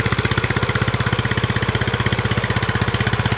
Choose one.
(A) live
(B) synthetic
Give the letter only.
A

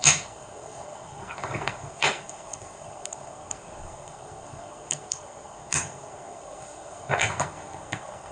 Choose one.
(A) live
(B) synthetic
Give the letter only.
B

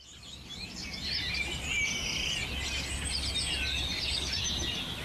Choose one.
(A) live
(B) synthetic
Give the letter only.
A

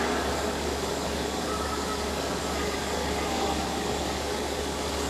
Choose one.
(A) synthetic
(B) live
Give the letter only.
A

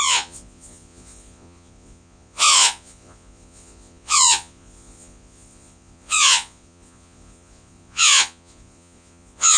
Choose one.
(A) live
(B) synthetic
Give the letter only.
B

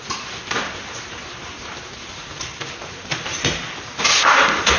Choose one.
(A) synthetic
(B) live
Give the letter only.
A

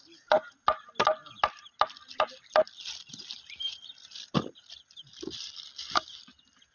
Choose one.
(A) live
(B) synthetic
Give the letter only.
A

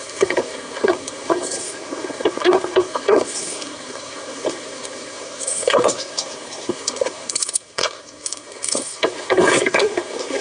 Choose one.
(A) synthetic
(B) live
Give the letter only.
A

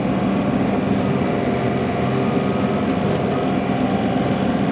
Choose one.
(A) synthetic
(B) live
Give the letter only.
B